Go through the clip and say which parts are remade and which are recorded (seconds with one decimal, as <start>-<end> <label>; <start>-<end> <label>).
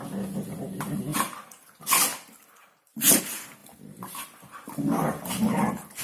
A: 0.0-1.1 recorded; 1.1-3.2 remade; 3.2-3.6 recorded; 3.6-6.0 remade